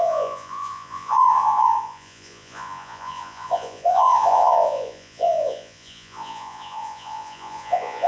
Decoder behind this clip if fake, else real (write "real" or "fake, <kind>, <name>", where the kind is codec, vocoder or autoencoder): fake, vocoder, Vocos